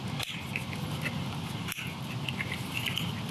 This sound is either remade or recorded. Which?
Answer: recorded